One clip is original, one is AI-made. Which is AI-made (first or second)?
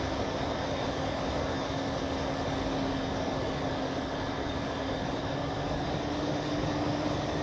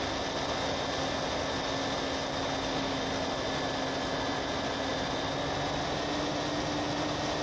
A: first